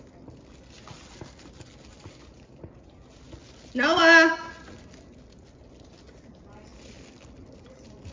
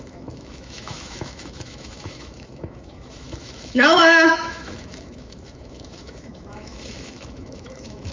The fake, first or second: second